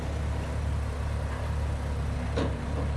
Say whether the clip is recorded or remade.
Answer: recorded